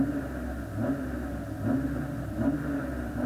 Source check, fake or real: real